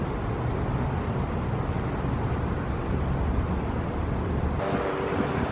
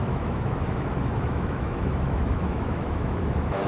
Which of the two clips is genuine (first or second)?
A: first